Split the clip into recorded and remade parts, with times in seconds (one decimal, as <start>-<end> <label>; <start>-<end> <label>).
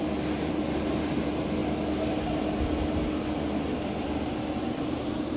0.0-1.6 remade; 1.6-4.8 recorded; 4.8-5.4 remade